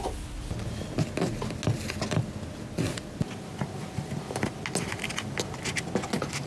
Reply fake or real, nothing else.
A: real